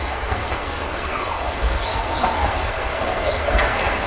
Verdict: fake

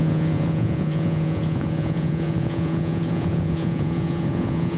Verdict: fake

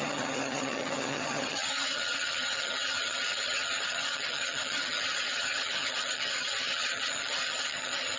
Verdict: fake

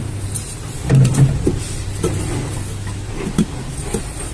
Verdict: real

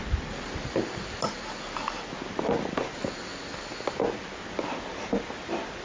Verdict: real